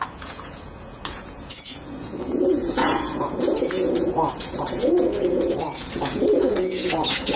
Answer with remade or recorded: remade